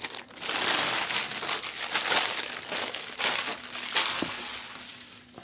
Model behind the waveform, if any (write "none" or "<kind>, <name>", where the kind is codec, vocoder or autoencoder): none